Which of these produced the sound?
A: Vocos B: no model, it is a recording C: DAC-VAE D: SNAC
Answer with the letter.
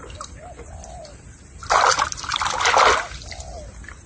B